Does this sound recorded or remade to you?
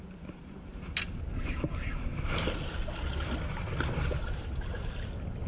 recorded